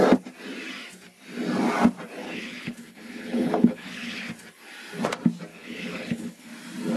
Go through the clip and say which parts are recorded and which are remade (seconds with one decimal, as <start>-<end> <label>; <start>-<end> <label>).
0.0-2.2 recorded; 2.2-4.3 remade; 4.3-5.5 recorded; 5.5-6.5 remade; 6.5-7.0 recorded